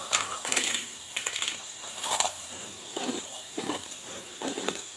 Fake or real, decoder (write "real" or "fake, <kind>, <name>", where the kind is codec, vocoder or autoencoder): fake, codec, SNAC